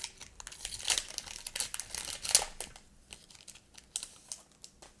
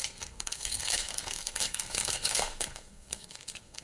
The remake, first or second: second